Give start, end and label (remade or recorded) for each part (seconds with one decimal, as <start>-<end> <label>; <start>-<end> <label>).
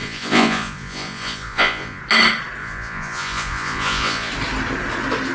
0.0-2.0 remade; 2.0-2.6 recorded; 2.6-4.3 remade; 4.3-5.3 recorded